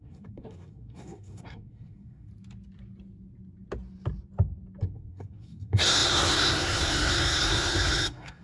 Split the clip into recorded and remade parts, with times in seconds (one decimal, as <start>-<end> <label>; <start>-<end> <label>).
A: 0.0-2.3 remade; 2.3-4.8 recorded; 4.8-8.4 remade